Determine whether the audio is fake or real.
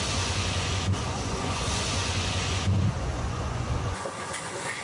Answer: fake